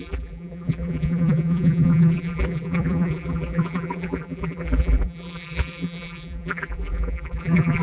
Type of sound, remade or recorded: remade